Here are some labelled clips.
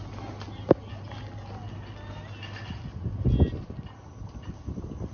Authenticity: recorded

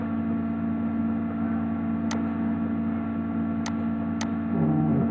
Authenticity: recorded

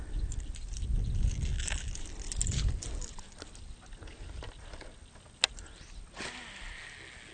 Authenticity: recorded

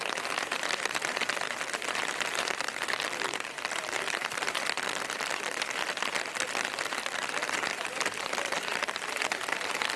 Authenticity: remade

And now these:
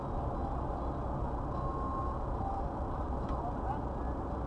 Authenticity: recorded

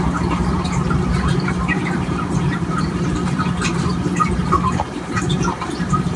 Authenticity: remade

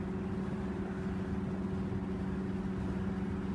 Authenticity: recorded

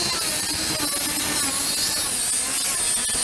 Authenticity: recorded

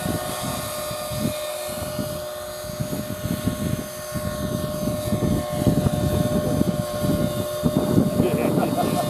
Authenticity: recorded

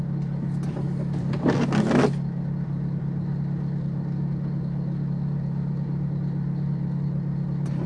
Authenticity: recorded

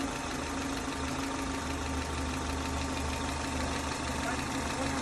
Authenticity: recorded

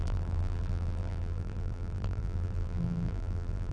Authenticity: remade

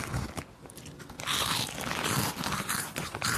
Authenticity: recorded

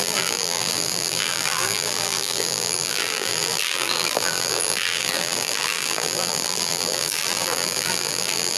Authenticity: remade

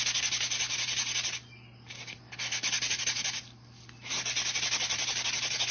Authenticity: recorded